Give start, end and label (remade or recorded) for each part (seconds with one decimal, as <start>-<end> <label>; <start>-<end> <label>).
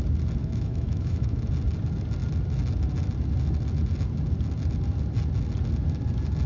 0.0-0.4 recorded; 0.4-1.5 remade; 1.5-6.5 recorded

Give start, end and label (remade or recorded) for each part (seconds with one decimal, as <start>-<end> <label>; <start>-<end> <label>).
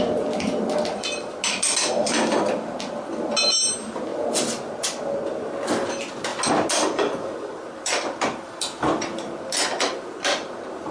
0.0-10.9 recorded